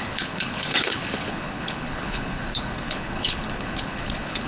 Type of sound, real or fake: fake